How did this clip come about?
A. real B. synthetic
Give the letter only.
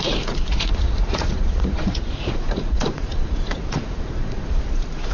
B